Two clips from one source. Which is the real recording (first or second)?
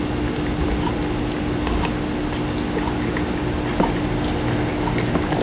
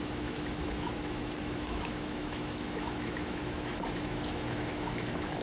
first